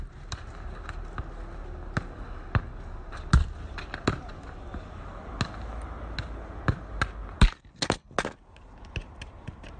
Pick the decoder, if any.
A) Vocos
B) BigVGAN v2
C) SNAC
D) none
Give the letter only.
D